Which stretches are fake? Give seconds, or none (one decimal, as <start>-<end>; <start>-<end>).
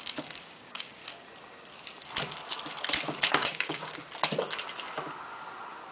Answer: 0.0-1.0; 3.2-4.0